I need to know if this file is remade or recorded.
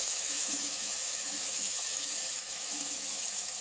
remade